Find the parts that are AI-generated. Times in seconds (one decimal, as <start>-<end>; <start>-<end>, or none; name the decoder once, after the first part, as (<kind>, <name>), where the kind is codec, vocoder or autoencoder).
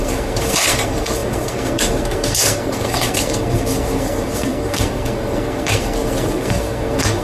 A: 0.0-7.2 (codec, SNAC)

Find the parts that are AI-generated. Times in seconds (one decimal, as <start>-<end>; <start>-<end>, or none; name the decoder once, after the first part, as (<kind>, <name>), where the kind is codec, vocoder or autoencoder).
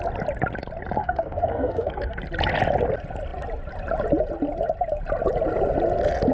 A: 1.0-2.2 (codec, SNAC)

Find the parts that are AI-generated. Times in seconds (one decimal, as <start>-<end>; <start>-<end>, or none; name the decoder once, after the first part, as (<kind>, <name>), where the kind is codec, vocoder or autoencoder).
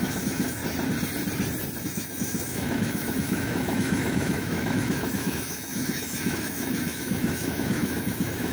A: 0.0-0.6 (autoencoder, DAC-VAE); 1.8-8.5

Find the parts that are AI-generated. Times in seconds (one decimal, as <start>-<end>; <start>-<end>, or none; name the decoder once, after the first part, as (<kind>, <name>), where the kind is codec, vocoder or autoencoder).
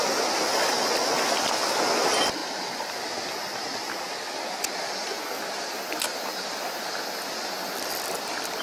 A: none